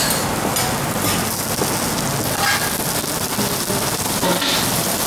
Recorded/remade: recorded